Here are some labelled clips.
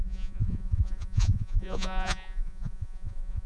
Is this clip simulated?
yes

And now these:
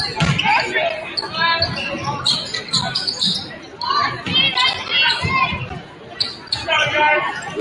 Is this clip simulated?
no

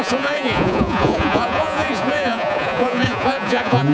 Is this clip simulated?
yes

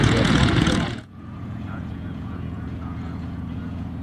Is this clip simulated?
yes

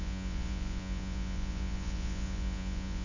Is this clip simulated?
yes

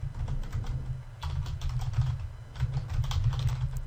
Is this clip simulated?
no